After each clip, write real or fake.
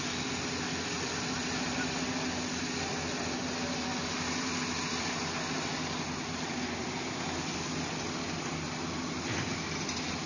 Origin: fake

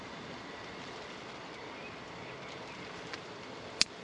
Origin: real